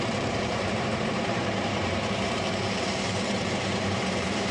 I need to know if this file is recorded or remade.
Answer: remade